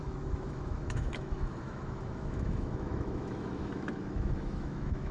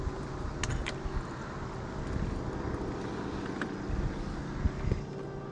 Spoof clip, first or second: first